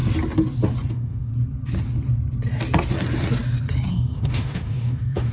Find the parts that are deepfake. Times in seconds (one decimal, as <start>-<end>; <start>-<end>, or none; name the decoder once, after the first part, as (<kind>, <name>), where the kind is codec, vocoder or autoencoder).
0.9-1.3 (autoencoder, DAC-VAE); 3.9-5.3